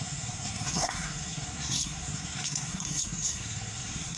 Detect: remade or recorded remade